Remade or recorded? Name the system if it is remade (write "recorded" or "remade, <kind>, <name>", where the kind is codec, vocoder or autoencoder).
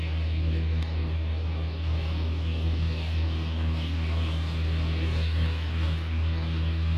remade, codec, DAC